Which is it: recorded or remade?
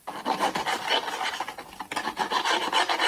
recorded